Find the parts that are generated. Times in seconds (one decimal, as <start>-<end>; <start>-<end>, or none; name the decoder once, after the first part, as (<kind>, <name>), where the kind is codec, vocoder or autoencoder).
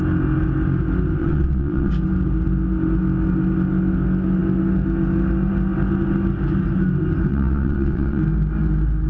1.2-1.9 (vocoder, WaveNeXt); 7.3-8.2